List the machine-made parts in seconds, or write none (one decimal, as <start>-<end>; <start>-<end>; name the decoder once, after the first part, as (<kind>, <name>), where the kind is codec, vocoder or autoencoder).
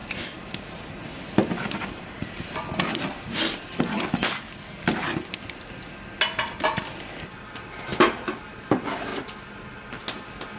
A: 0.0-3.8 (vocoder, BigVGAN v2)